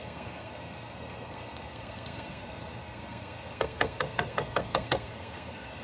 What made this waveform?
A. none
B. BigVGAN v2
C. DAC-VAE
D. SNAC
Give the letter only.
D